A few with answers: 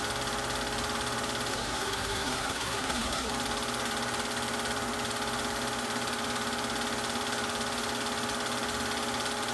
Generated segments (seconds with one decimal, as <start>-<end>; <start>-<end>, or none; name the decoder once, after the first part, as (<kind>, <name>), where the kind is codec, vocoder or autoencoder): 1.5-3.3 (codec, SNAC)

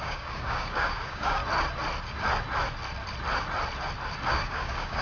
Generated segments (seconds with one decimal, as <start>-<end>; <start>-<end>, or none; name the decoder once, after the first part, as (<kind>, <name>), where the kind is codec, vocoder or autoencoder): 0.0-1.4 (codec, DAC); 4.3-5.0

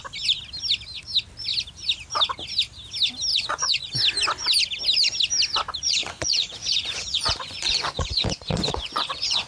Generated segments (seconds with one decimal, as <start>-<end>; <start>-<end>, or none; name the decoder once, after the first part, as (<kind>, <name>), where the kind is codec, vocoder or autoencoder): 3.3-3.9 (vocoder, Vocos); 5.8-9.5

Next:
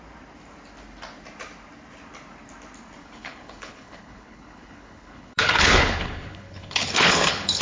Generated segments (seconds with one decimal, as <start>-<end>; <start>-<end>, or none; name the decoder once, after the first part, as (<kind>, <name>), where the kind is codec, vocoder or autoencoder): 3.0-7.6 (codec, HILCodec)

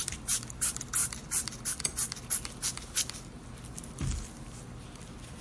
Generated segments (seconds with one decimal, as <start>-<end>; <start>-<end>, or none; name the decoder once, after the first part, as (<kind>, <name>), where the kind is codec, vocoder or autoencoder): none